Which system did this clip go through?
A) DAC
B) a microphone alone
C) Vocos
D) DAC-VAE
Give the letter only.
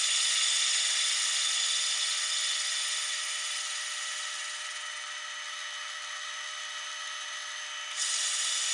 B